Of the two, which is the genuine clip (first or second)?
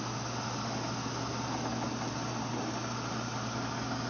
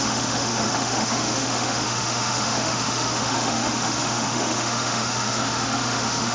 first